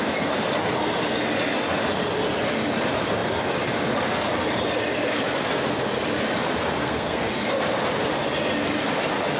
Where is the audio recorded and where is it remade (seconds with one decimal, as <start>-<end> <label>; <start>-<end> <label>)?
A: 0.0-6.8 recorded; 6.8-7.3 remade; 7.3-9.4 recorded